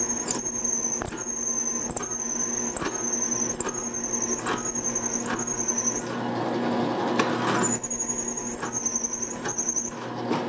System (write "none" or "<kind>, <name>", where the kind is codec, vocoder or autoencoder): none